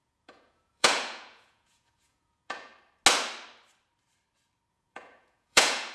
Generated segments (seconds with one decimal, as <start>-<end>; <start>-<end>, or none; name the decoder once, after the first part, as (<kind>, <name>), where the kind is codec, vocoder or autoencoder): 0.0-2.7 (vocoder, Vocos); 4.7-5.9